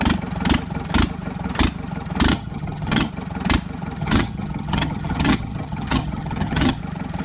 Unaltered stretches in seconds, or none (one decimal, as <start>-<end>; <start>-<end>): 0.0-2.3; 3.1-4.0; 6.8-7.2

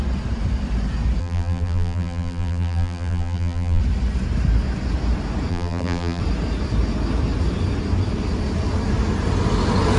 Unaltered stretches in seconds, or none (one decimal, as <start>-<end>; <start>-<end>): 0.0-1.2; 3.8-5.5; 6.2-10.0

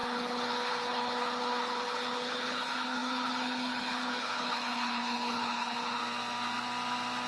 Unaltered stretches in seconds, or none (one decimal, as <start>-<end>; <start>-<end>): 6.0-7.3

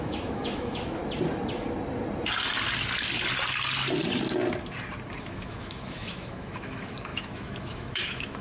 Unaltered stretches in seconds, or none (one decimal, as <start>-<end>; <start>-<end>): 1.0-5.2

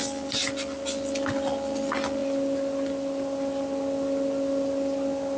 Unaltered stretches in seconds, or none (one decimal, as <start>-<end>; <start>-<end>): 0.0-5.4

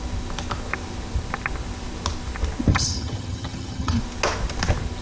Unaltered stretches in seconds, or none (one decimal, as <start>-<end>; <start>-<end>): 0.0-2.7; 4.0-5.0